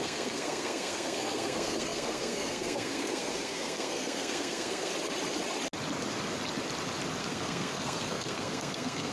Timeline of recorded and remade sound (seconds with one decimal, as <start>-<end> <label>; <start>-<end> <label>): 0.0-4.9 remade; 4.9-7.2 recorded; 7.2-9.1 remade